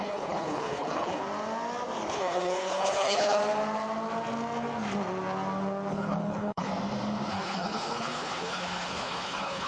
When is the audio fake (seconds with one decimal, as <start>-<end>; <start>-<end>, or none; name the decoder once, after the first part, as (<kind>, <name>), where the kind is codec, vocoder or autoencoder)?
0.0-1.2 (codec, HILCodec); 2.1-3.4; 5.9-6.7; 7.3-9.7